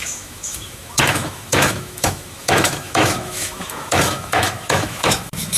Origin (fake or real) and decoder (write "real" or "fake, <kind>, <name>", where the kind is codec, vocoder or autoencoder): fake, autoencoder, DAC-VAE